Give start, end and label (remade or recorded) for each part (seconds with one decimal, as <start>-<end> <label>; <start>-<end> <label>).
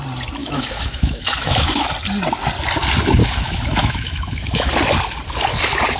0.0-0.4 recorded; 0.4-1.9 remade; 1.9-3.2 recorded; 3.2-4.7 remade; 4.7-6.0 recorded